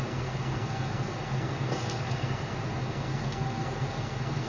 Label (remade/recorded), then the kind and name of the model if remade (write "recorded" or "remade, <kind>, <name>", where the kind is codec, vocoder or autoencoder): remade, codec, SNAC